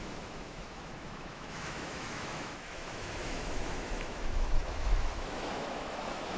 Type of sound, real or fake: fake